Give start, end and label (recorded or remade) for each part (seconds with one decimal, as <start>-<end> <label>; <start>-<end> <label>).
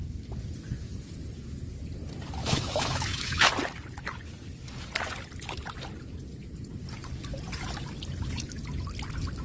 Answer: 0.0-2.4 recorded; 2.4-3.5 remade; 3.5-9.4 recorded